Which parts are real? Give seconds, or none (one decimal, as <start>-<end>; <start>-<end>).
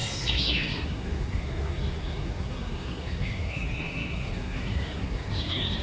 none